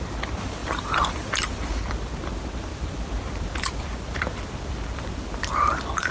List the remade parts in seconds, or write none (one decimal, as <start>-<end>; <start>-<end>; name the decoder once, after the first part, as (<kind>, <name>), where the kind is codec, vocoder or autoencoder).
0.6-1.5 (vocoder, BigVGAN v2); 2.7-6.1